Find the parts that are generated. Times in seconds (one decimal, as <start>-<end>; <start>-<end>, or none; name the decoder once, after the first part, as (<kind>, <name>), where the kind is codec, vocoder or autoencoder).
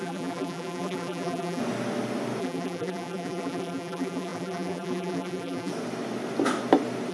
0.0-1.6 (vocoder, BigVGAN v2); 2.4-5.7